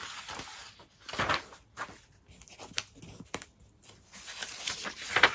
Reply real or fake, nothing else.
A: real